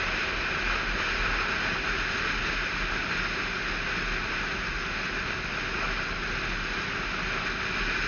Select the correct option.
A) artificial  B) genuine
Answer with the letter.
B